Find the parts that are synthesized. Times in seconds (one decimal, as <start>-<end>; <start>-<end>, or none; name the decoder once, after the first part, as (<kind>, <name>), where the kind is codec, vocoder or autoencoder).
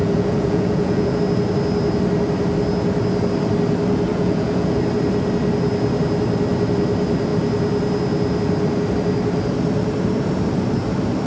0.0-1.2 (vocoder, Vocos); 4.1-4.8